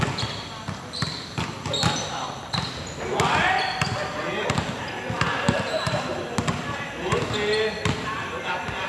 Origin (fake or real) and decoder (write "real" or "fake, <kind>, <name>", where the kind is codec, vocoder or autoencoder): real